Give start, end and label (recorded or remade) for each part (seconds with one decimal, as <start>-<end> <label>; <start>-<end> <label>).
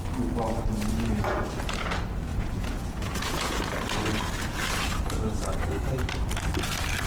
0.0-2.3 recorded; 2.3-3.6 remade; 3.6-7.1 recorded